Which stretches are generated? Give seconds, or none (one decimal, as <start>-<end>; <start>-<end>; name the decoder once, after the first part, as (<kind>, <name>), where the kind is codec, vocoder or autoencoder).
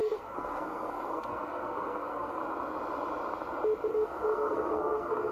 0.0-2.4 (codec, SNAC); 3.9-5.3